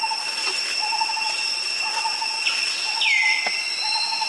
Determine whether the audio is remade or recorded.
recorded